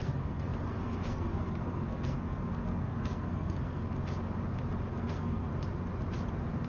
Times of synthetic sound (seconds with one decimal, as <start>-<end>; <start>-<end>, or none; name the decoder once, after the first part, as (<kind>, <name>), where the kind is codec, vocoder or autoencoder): 0.0-3.9 (codec, SNAC); 4.9-5.5